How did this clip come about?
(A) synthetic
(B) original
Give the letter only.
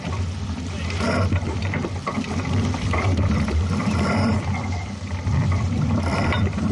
A